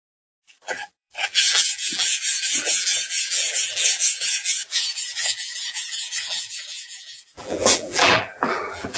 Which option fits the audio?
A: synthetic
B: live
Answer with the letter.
A